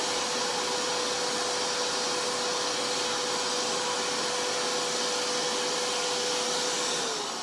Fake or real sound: real